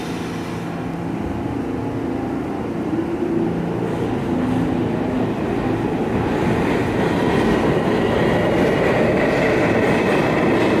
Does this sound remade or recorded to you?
recorded